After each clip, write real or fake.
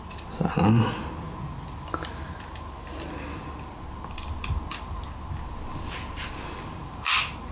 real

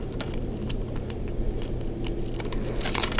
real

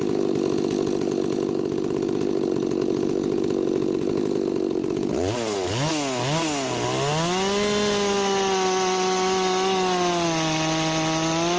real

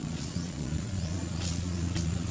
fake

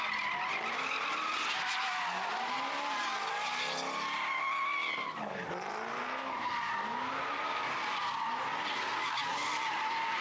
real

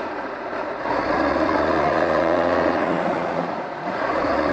fake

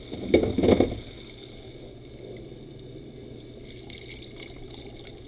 real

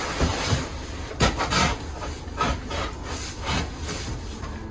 real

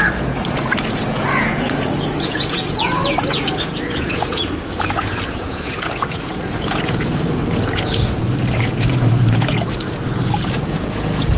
fake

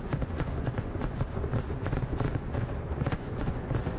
fake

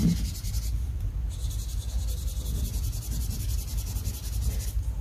real